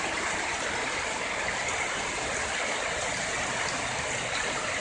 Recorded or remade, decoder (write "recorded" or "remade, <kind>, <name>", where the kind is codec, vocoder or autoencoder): recorded